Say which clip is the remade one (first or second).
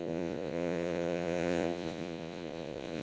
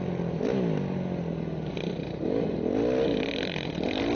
first